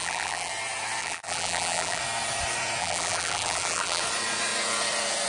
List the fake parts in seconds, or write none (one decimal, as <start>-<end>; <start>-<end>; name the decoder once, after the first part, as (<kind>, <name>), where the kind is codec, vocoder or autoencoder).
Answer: 0.0-0.5 (vocoder, BigVGAN v2); 1.0-2.0; 2.8-4.0